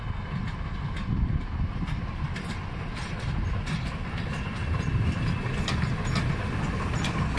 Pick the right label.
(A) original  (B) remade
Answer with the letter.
A